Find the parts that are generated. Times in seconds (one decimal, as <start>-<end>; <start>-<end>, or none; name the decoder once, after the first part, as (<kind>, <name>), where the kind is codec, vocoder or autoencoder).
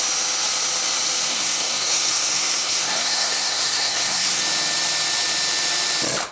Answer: 1.3-4.4 (codec, SNAC)